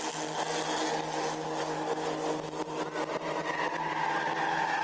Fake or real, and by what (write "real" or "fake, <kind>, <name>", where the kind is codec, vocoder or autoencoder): real